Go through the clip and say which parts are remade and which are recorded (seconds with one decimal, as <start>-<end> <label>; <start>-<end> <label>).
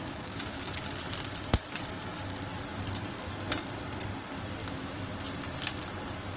0.0-0.7 remade; 0.7-4.6 recorded; 4.6-5.1 remade; 5.1-6.4 recorded